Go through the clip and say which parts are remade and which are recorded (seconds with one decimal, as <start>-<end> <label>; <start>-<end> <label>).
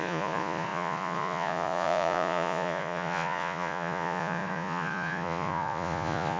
0.0-6.4 remade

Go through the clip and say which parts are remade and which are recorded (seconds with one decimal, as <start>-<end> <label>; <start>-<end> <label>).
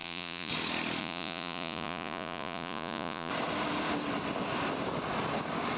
0.0-0.5 remade; 0.5-1.0 recorded; 1.0-3.3 remade; 3.3-5.8 recorded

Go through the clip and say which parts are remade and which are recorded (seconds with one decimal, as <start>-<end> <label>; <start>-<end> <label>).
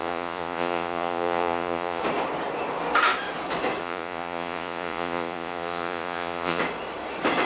0.0-2.0 remade; 2.0-3.8 recorded; 3.8-6.6 remade; 6.6-7.5 recorded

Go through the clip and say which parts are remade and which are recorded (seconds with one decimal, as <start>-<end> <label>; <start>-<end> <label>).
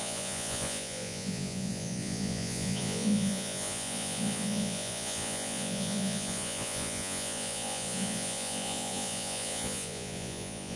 0.0-10.8 remade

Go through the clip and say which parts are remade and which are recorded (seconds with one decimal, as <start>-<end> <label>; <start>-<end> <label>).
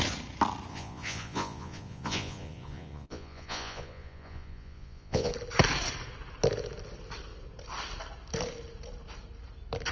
0.0-0.7 recorded; 0.7-5.3 remade; 5.3-9.9 recorded